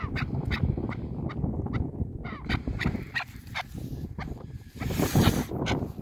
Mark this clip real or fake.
real